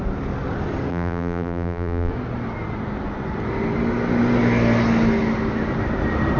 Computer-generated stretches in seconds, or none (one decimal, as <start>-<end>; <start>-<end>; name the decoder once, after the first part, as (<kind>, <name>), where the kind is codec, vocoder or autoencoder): 0.9-2.1 (vocoder, BigVGAN v2)